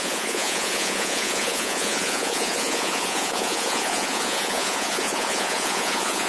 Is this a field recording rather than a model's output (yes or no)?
no